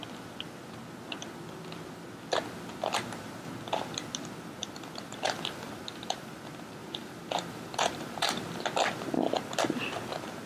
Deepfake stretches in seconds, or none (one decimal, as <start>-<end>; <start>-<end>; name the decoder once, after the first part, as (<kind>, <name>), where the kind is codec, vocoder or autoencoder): 4.6-6.3 (vocoder, BigVGAN v2); 6.8-8.3